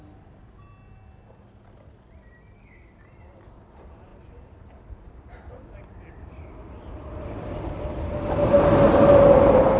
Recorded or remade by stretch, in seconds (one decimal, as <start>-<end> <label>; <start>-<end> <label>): 0.0-4.1 recorded; 4.1-9.2 remade; 9.2-9.8 recorded